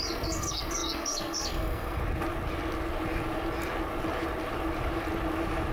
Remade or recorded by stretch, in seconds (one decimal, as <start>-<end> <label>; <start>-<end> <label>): 0.0-2.0 remade; 2.0-5.7 recorded

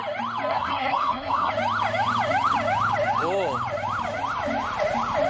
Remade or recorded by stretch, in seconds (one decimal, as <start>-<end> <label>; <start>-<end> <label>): 0.0-0.5 recorded; 0.5-1.5 remade; 1.5-5.3 recorded

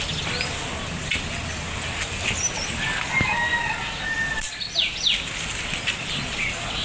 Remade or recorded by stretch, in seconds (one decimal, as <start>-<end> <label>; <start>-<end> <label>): 0.0-6.8 recorded

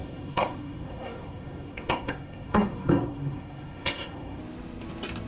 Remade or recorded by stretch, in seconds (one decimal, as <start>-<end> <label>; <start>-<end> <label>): 0.0-4.4 remade; 4.4-5.3 recorded

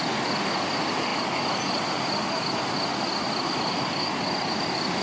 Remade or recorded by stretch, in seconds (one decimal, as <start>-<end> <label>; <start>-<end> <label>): 0.0-5.0 recorded